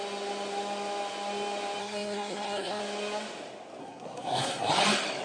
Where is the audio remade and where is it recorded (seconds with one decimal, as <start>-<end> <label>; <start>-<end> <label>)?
0.0-1.8 recorded; 1.8-2.8 remade; 2.8-3.8 recorded; 3.8-4.7 remade; 4.7-5.2 recorded